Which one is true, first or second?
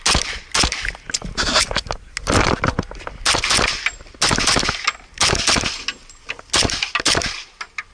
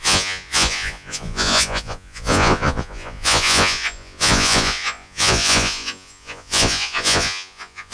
first